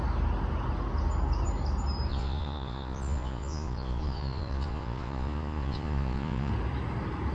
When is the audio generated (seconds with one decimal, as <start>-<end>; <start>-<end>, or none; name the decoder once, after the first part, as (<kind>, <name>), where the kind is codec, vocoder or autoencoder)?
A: 2.1-6.5 (vocoder, Vocos)